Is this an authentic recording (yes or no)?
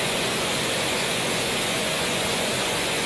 no